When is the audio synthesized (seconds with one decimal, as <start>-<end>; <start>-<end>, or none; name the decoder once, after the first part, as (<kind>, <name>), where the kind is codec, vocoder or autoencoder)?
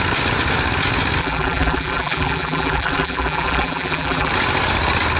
1.2-4.3 (vocoder, BigVGAN v2)